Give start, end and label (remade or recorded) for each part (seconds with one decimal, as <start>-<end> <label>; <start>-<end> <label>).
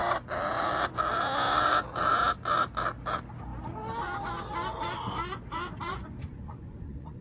0.0-5.9 recorded; 5.9-7.2 remade